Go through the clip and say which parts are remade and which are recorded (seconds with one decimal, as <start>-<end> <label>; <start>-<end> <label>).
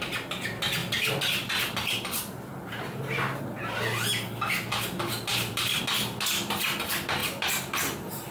0.0-5.3 recorded; 5.3-5.8 remade; 5.8-7.2 recorded; 7.2-8.3 remade